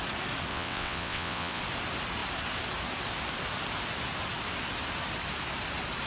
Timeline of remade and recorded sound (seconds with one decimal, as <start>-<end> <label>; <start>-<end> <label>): 0.0-0.5 recorded; 0.5-1.6 remade; 1.6-6.1 recorded